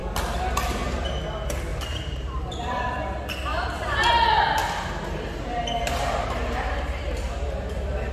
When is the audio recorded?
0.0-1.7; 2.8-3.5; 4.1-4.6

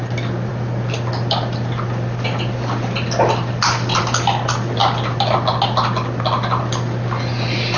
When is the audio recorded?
0.0-7.8

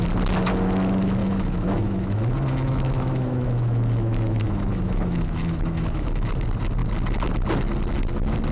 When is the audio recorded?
0.0-1.2; 6.3-8.5

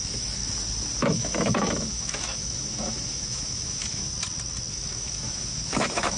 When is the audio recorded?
0.4-1.0; 4.0-4.7

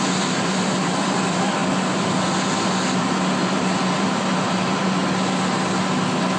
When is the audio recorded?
1.6-3.0; 5.0-6.4

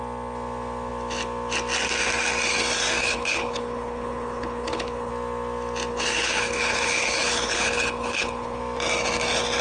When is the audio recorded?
0.0-3.0; 5.1-5.9; 8.6-9.6

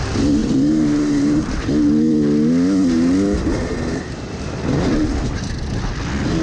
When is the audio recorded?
0.0-0.4; 1.7-3.6; 4.6-6.4